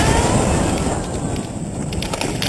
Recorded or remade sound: recorded